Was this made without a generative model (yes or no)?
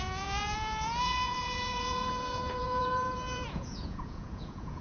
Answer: no